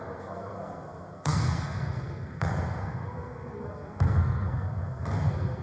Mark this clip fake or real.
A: fake